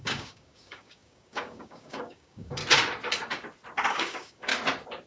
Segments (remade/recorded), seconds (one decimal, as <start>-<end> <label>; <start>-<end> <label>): 0.0-2.6 remade; 2.6-3.9 recorded; 3.9-4.5 remade; 4.5-5.1 recorded